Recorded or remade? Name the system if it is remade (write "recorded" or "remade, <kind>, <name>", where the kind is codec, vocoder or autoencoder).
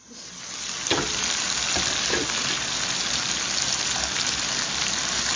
recorded